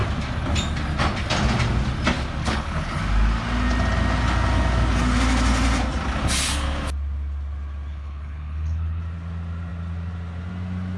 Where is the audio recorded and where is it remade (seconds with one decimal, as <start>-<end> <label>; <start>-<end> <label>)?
0.0-2.4 recorded; 2.4-3.0 remade; 3.0-7.9 recorded; 7.9-9.0 remade; 9.0-11.0 recorded